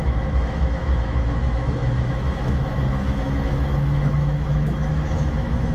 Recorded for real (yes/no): no